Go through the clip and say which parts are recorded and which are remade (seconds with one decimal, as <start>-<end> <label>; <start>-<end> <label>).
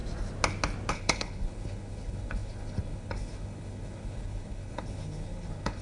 0.0-0.9 recorded; 0.9-5.8 remade